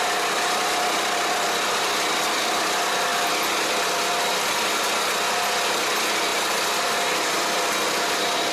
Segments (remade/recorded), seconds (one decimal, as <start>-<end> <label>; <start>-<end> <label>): 0.0-8.5 recorded